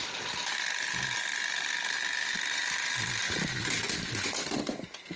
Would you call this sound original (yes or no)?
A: yes